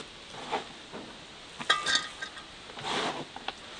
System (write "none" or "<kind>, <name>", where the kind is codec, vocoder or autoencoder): none